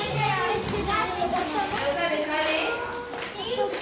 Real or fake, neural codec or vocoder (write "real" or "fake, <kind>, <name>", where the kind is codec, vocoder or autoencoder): real